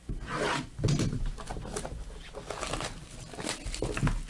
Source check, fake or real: real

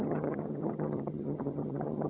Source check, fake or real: fake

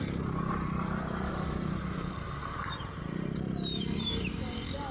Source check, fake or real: fake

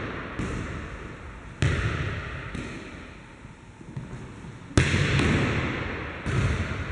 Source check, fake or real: real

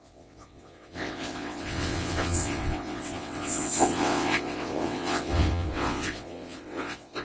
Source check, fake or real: fake